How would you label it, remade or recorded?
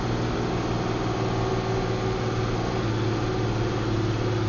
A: recorded